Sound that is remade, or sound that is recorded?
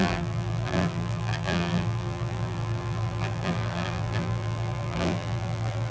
remade